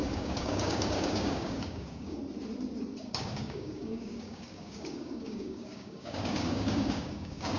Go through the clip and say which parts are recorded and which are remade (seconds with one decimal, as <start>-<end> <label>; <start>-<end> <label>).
0.0-2.2 remade; 2.2-3.0 recorded; 3.0-7.6 remade